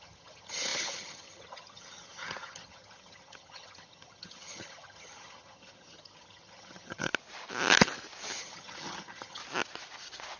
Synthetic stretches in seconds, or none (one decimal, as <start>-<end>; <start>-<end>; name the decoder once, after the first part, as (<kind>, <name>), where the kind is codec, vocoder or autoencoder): 0.0-7.1 (vocoder, HiFi-GAN); 8.4-9.4